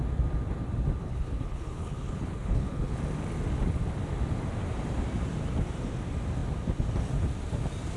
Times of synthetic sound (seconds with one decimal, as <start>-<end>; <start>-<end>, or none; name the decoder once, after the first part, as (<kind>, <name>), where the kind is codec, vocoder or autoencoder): 1.0-3.0 (codec, HILCodec)